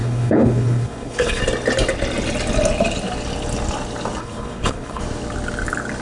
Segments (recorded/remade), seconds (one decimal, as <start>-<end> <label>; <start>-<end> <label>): 0.0-1.4 remade; 1.4-4.2 recorded; 4.2-5.0 remade; 5.0-6.0 recorded